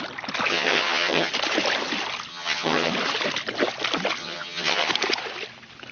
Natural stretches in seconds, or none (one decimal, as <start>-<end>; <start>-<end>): 0.0-0.5; 1.3-2.3; 2.9-4.2; 4.9-5.9